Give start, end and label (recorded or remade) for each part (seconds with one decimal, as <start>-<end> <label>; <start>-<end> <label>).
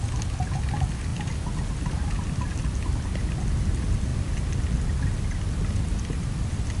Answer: 0.0-6.8 recorded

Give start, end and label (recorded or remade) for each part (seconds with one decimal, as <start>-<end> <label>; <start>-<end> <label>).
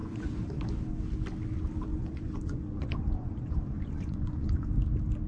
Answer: 0.0-0.7 remade; 0.7-1.9 recorded; 1.9-4.7 remade; 4.7-5.3 recorded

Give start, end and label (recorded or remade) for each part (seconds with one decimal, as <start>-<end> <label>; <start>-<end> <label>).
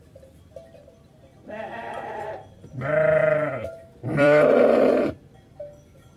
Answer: 0.0-6.2 remade